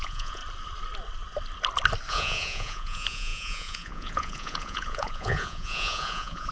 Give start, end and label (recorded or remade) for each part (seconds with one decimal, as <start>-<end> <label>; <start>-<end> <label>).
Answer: 0.0-0.4 remade; 0.4-2.1 recorded; 2.1-6.5 remade